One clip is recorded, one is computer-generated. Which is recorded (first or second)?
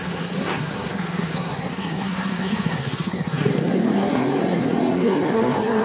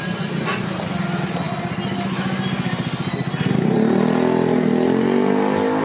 second